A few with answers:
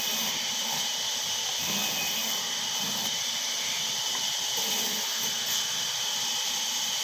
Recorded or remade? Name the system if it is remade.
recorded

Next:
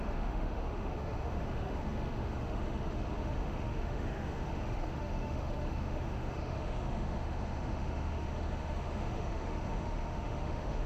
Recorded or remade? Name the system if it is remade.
remade, autoencoder, DAC-VAE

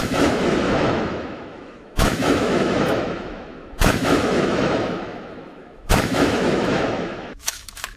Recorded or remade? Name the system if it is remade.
remade, autoencoder, DAC-VAE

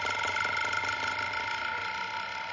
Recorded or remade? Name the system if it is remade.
recorded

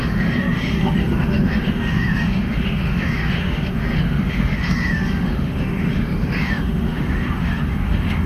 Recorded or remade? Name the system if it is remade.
remade, autoencoder, DAC-VAE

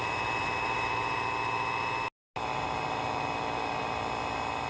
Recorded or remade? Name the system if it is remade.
recorded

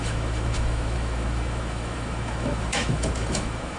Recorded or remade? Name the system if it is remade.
remade, autoencoder, DAC-VAE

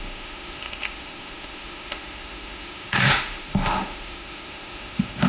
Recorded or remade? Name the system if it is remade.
remade, autoencoder, DAC-VAE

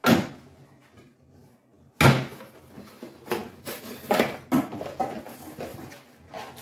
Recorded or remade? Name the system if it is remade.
recorded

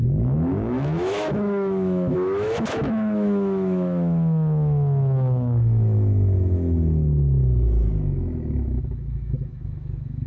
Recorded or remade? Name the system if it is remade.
remade, autoencoder, DAC-VAE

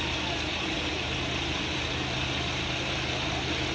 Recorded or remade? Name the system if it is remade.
recorded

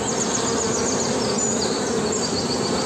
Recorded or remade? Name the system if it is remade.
recorded